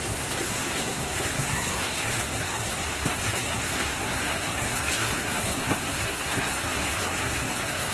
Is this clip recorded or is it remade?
remade